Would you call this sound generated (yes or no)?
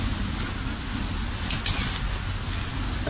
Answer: no